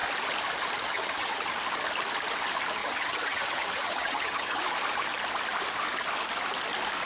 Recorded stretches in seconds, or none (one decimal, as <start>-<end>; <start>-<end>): 0.0-0.9; 1.5-2.8; 4.6-7.1

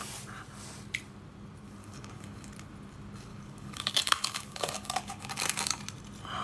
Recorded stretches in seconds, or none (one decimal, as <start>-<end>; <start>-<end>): 0.0-1.8; 2.5-3.3; 5.8-6.4

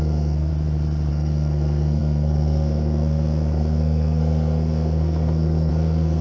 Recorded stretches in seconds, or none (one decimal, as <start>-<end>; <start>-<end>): 0.5-1.1

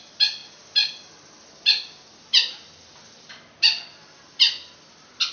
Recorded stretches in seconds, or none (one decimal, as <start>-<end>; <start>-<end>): 0.0-5.3

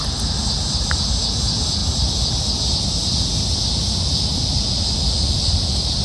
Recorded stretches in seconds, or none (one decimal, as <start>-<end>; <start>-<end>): 0.0-6.0

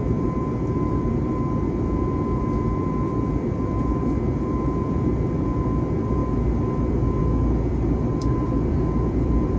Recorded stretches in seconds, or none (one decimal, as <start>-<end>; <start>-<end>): 6.2-7.2

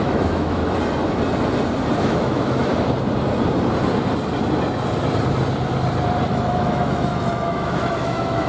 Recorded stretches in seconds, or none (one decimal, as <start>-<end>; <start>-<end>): 0.6-2.0; 2.7-6.3